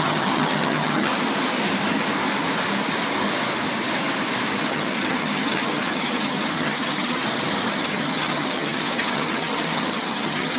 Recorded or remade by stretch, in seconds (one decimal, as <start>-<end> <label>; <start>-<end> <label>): 0.0-1.1 remade; 1.1-4.7 recorded; 4.7-7.2 remade; 7.2-7.7 recorded; 7.7-10.6 remade